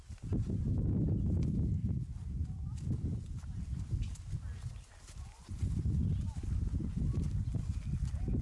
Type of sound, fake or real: fake